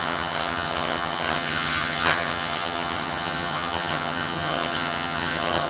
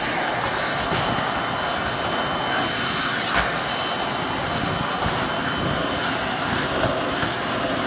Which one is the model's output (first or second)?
first